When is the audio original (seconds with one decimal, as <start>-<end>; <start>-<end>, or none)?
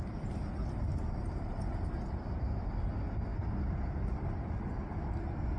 0.0-0.9; 1.9-5.6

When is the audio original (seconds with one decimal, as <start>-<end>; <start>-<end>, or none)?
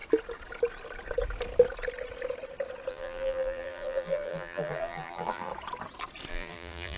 0.0-2.9; 5.5-6.3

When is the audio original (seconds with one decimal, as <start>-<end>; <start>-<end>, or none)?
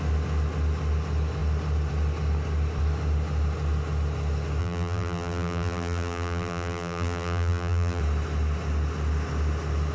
0.0-4.6; 8.0-9.9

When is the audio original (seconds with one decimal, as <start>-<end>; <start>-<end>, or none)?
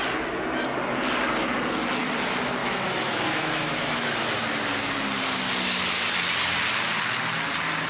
0.0-2.6; 4.4-7.9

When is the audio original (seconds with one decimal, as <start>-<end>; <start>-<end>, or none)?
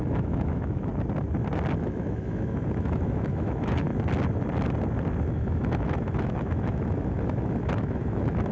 0.9-1.8; 3.9-5.3